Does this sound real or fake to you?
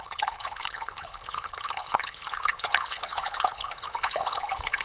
fake